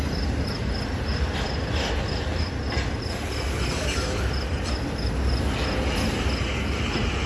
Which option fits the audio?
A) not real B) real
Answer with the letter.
B